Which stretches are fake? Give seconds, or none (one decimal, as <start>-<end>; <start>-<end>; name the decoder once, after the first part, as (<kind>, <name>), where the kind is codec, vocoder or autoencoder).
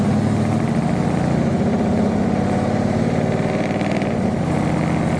1.5-4.6 (vocoder, BigVGAN v2)